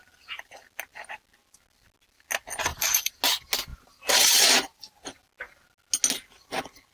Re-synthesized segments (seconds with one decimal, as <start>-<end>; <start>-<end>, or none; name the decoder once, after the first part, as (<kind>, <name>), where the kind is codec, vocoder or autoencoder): 2.7-3.2 (vocoder, BigVGAN v2); 3.7-5.3